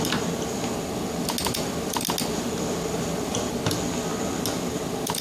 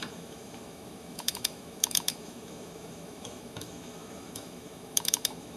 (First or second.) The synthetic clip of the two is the second